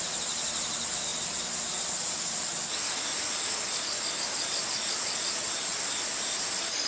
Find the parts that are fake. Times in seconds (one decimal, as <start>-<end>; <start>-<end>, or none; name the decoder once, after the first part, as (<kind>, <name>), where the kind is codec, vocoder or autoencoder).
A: 0.0-1.1 (vocoder, BigVGAN v2); 4.1-5.7